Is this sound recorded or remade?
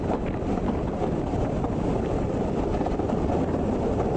recorded